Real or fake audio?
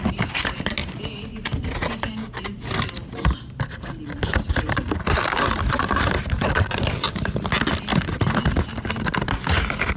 real